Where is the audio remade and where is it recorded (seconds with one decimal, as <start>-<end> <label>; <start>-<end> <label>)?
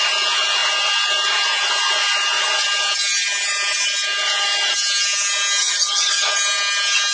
0.0-5.6 recorded; 5.6-6.3 remade; 6.3-7.1 recorded